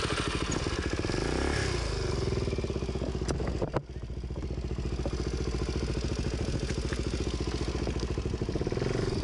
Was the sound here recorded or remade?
recorded